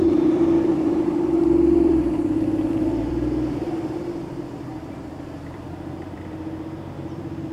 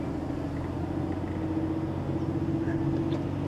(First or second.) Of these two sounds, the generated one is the first